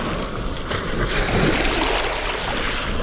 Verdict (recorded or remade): recorded